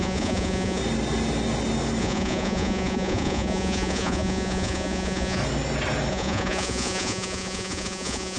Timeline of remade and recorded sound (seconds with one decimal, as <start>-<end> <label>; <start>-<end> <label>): 0.0-0.8 remade; 0.8-2.0 recorded; 2.0-5.4 remade; 5.4-6.1 recorded; 6.1-8.4 remade